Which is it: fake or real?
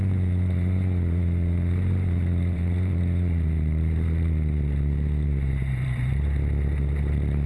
fake